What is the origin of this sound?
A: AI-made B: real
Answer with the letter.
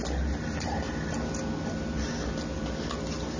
B